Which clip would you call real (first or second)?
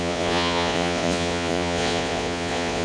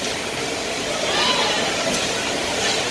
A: second